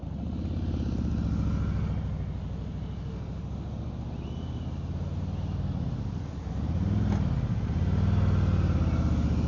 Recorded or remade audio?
recorded